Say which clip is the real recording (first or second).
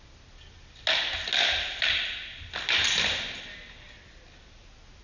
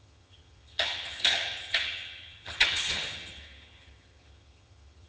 first